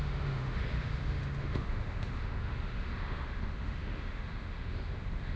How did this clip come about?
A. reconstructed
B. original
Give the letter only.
A